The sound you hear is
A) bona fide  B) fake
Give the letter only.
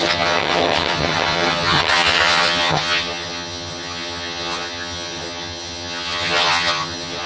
B